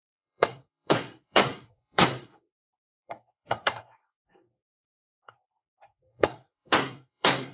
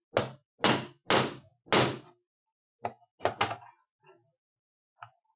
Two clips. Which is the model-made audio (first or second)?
first